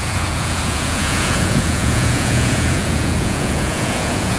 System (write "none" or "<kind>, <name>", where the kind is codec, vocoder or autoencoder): vocoder, Vocos